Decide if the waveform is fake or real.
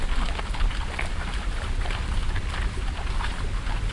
real